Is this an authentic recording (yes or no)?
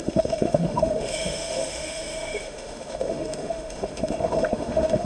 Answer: no